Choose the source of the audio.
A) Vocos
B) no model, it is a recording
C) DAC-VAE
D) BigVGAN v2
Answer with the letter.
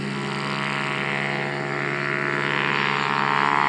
B